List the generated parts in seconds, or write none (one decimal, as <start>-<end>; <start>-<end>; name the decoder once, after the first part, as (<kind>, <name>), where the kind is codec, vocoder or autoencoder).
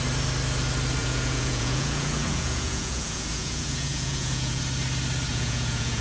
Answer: 1.0-4.6 (vocoder, Vocos); 5.3-6.0